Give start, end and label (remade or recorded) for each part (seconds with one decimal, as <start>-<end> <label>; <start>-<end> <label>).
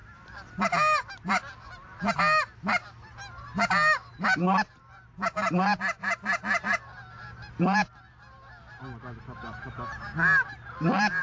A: 0.0-11.2 recorded